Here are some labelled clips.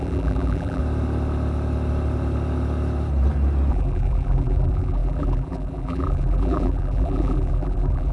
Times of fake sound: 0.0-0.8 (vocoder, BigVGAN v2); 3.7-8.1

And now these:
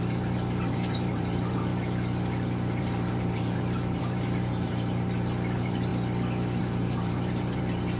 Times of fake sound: 0.0-1.7 (vocoder, BigVGAN v2); 2.8-5.9; 6.6-8.0